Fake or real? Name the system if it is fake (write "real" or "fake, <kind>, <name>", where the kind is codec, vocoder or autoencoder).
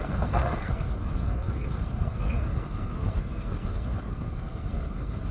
fake, codec, SNAC